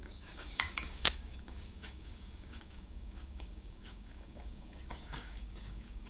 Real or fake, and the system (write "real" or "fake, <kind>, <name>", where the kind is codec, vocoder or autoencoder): fake, codec, DAC